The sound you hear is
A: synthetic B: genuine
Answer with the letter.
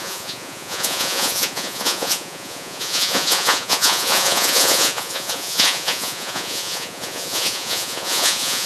A